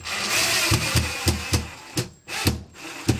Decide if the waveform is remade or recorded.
recorded